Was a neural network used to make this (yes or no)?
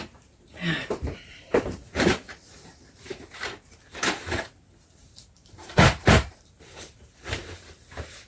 yes